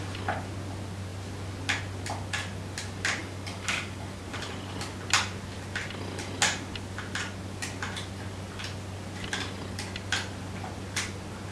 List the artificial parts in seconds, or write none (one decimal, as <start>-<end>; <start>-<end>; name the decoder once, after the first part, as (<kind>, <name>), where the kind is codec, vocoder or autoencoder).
3.2-4.2 (codec, DAC)